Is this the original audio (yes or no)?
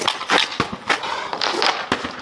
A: yes